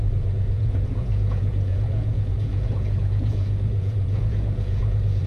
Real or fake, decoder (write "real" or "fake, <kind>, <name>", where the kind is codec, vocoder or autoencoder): fake, vocoder, Vocos